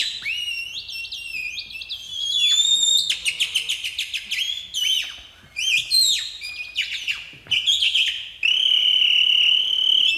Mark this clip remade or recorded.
recorded